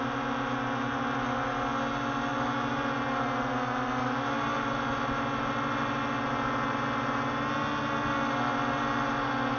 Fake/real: real